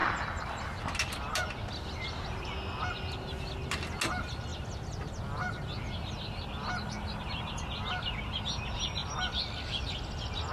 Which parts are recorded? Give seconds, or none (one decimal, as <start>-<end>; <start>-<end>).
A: 0.8-4.5; 7.5-9.0; 10.0-10.5